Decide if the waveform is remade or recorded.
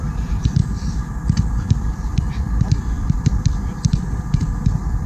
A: remade